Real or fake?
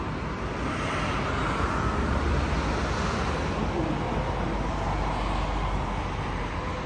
real